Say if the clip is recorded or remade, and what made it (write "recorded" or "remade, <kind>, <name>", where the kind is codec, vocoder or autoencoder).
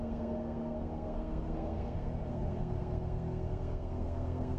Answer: remade, codec, SNAC